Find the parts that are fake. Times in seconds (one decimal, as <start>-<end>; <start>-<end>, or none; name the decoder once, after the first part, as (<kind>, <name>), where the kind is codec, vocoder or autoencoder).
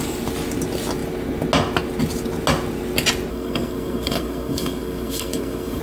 3.3-5.8 (codec, SNAC)